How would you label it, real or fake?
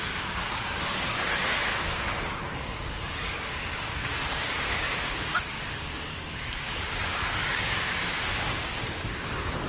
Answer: fake